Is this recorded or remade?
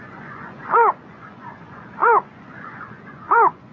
remade